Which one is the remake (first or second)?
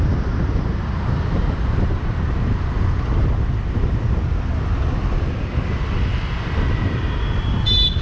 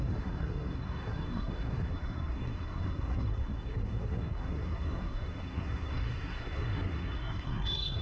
second